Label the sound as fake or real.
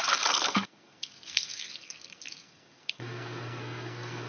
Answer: fake